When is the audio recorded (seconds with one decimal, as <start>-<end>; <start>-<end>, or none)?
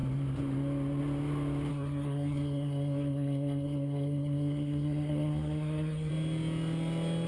0.0-1.7; 6.1-7.3